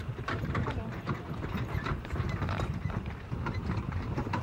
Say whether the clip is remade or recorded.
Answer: remade